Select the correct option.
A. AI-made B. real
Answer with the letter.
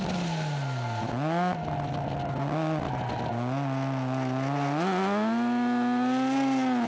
B